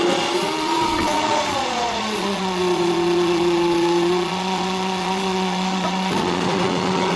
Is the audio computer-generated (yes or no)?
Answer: yes